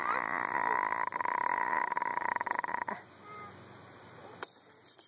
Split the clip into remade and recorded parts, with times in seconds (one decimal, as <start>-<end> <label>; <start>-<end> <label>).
0.0-5.1 recorded